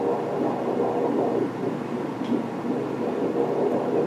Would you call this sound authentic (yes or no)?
no